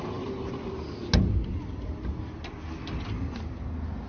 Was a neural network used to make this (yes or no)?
no